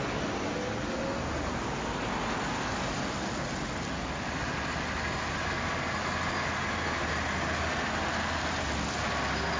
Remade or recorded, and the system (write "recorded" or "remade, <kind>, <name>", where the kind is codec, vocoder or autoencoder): recorded